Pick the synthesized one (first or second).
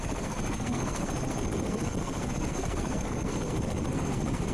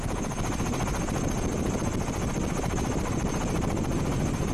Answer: first